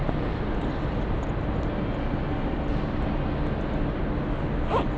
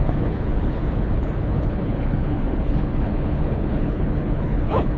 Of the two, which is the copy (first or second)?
second